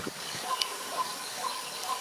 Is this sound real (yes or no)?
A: no